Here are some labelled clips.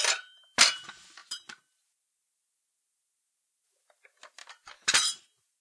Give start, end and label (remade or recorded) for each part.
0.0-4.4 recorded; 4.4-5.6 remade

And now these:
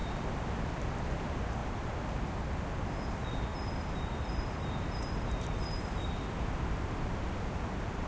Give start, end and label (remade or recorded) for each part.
0.0-3.5 recorded; 3.5-6.4 remade; 6.4-8.1 recorded